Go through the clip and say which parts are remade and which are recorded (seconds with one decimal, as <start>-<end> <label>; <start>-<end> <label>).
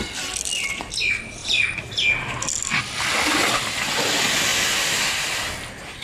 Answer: 0.0-6.0 recorded